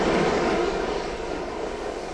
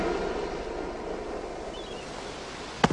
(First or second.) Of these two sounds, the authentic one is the second